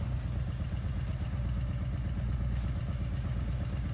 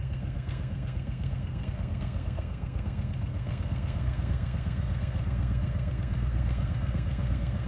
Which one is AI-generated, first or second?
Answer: second